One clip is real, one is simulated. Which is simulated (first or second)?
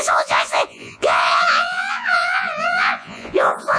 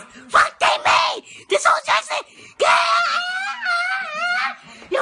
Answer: first